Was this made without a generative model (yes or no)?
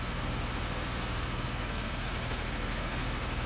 no